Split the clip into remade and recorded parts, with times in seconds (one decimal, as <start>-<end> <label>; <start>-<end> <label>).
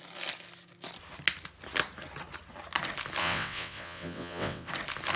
0.0-3.2 recorded; 3.2-4.7 remade; 4.7-5.2 recorded